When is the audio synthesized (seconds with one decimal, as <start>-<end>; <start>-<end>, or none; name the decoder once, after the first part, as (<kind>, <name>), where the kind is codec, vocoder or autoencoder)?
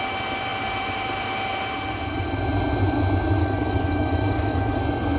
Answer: 3.4-4.8 (autoencoder, DAC-VAE)